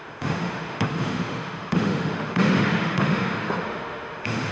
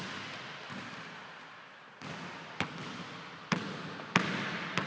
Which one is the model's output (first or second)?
first